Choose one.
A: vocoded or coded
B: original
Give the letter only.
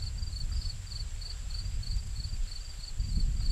B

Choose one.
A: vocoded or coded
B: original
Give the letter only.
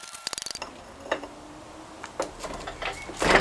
B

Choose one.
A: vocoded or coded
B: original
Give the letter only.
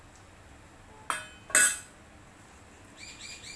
B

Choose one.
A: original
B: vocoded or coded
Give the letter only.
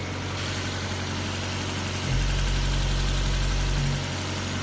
A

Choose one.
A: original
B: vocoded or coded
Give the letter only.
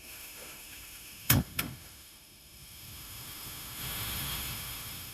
B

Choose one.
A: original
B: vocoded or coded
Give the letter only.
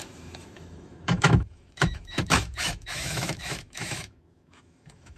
B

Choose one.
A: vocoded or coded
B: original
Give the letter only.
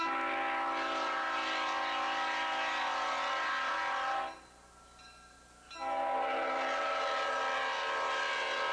B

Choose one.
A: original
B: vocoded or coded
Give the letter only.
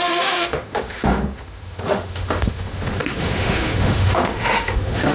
B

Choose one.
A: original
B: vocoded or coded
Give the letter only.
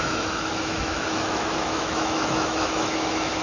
B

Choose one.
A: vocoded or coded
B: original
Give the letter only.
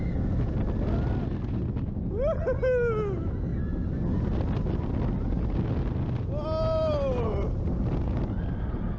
B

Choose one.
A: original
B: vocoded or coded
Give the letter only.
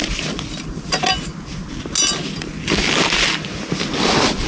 A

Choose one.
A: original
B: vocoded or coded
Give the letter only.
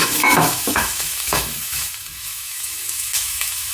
B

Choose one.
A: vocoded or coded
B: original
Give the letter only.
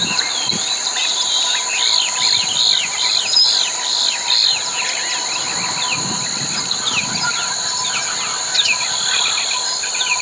B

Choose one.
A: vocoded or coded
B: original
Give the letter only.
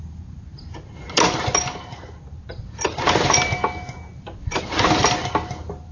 B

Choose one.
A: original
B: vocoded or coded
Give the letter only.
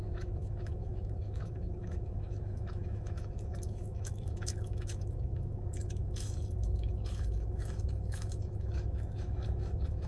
B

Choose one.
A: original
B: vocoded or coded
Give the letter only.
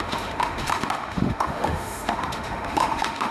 B